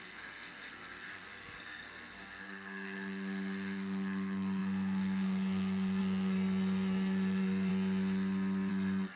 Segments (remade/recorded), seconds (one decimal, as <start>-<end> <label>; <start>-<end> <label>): 0.0-7.7 remade; 7.7-8.7 recorded; 8.7-9.2 remade